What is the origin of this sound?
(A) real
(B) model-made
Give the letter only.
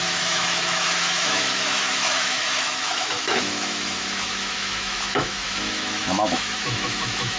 B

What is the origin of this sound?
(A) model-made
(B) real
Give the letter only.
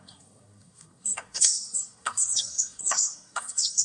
A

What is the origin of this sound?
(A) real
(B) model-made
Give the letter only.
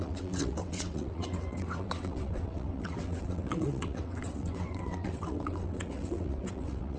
B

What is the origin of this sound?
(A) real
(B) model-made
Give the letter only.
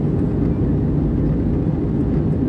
A